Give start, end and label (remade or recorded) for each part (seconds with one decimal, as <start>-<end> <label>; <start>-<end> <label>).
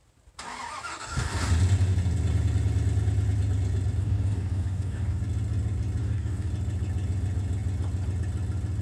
0.0-0.9 recorded; 0.9-1.4 remade; 1.4-4.0 recorded; 4.0-5.2 remade; 5.2-6.0 recorded; 6.0-6.5 remade; 6.5-8.8 recorded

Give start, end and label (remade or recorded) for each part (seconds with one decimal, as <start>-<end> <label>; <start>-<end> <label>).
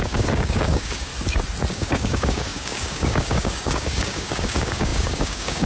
0.0-1.1 remade; 1.1-1.7 recorded; 1.7-5.7 remade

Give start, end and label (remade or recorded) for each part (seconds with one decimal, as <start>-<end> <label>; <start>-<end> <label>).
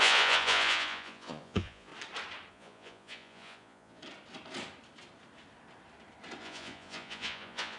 0.0-1.9 remade; 1.9-2.5 recorded; 2.5-4.0 remade; 4.0-6.4 recorded; 6.4-7.8 remade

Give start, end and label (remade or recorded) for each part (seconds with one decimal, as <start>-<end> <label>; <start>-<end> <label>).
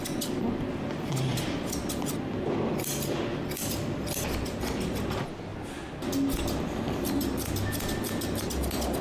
0.0-9.0 recorded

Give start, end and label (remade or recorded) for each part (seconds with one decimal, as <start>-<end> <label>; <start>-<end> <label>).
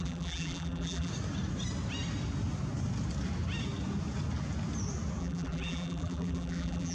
0.0-1.1 remade; 1.1-5.2 recorded; 5.2-6.9 remade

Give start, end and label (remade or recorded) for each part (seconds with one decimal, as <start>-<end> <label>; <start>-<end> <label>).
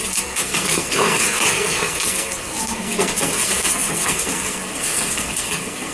0.0-5.9 remade